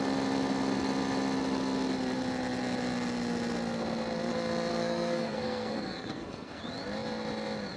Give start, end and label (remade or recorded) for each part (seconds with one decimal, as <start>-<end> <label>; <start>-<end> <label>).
0.0-4.7 recorded; 4.7-6.6 remade; 6.6-7.8 recorded

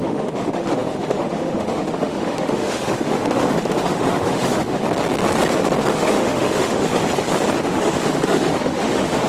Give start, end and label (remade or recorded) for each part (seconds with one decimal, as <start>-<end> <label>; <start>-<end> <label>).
0.0-4.8 remade; 4.8-5.9 recorded; 5.9-7.0 remade; 7.0-7.6 recorded; 7.6-9.3 remade